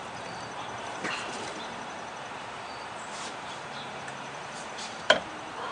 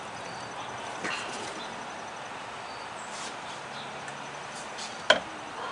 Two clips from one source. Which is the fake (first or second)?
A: first